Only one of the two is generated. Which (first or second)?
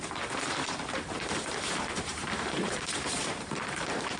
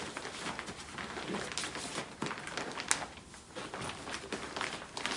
first